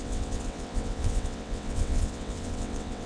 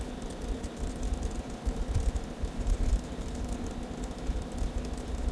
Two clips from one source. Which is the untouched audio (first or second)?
second